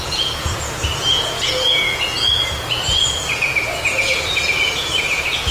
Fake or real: fake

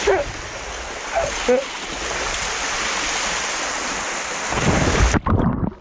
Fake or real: real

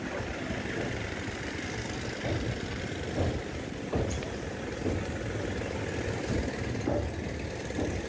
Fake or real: real